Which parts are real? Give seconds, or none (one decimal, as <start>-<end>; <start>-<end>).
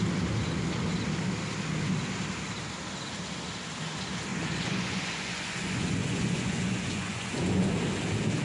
0.0-4.3; 7.7-8.4